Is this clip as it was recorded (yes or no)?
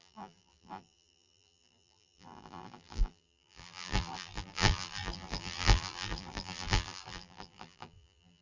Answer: no